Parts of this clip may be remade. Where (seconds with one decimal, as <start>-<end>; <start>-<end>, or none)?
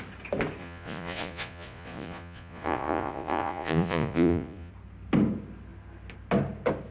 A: 0.6-4.7